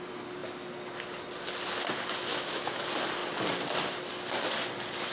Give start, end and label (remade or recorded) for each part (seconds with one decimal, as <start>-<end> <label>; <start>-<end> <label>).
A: 0.0-2.3 recorded; 2.3-2.8 remade; 2.8-5.1 recorded